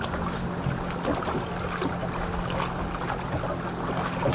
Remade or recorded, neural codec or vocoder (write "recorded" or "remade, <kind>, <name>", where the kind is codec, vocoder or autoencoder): recorded